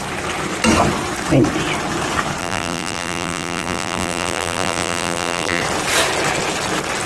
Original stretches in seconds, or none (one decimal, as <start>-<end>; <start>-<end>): 0.0-2.4; 5.6-7.1